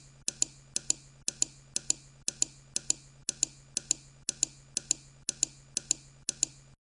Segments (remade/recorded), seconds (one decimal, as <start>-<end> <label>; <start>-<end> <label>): 0.0-6.9 recorded